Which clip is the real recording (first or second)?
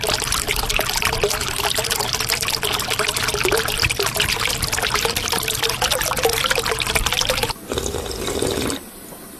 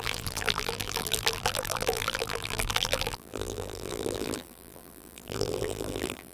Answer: first